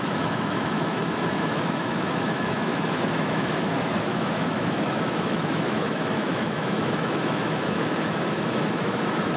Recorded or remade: remade